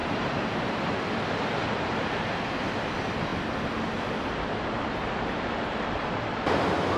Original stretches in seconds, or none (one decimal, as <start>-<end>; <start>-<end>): 0.9-7.0